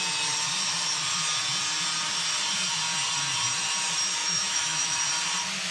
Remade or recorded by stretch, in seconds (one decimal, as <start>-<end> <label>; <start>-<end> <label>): 0.0-4.2 recorded; 4.2-5.0 remade; 5.0-5.7 recorded